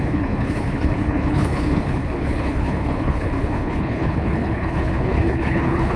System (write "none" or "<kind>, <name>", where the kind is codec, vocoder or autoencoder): codec, HILCodec